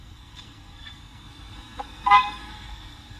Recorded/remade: remade